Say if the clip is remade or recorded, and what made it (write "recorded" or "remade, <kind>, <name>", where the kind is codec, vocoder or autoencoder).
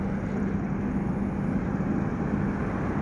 recorded